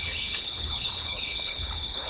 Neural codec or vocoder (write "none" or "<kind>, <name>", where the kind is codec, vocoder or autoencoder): codec, HILCodec